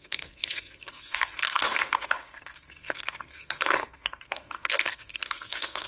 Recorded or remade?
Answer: remade